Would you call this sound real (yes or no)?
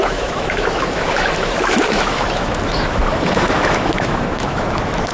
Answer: no